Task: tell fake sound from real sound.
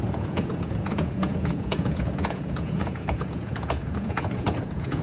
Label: fake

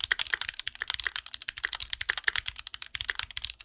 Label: real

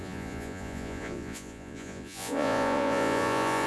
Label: fake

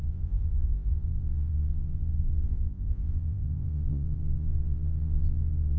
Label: fake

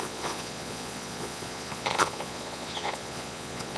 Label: fake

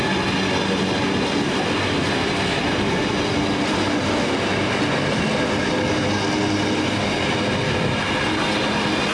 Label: real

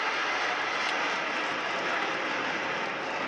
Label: real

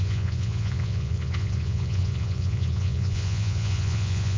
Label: fake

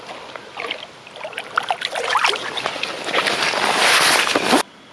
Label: real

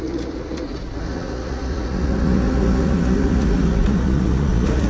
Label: fake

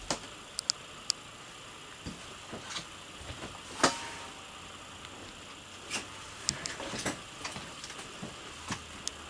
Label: real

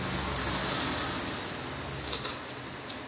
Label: real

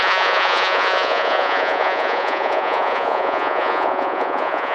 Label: fake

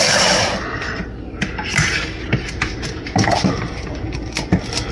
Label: real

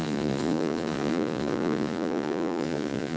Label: fake